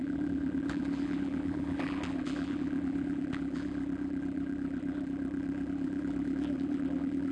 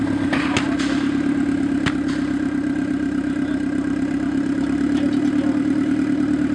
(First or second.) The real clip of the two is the second